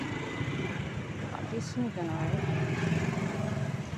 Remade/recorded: recorded